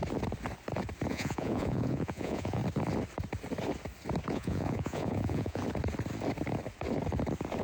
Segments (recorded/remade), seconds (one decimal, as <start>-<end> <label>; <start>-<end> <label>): 0.0-1.1 recorded; 1.1-2.6 remade; 2.6-4.3 recorded; 4.3-5.6 remade; 5.6-7.6 recorded